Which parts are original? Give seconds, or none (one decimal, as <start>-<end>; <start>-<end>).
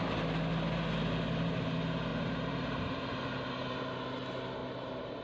0.0-2.1; 3.7-4.6